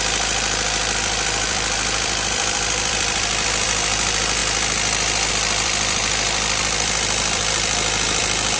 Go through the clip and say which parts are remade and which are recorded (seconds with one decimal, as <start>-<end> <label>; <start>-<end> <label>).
0.0-4.4 remade; 4.4-5.3 recorded; 5.3-8.6 remade